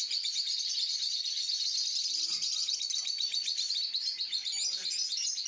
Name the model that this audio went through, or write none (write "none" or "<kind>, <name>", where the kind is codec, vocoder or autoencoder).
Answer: none